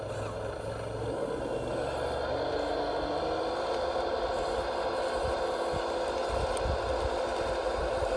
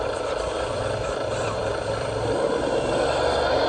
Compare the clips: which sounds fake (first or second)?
second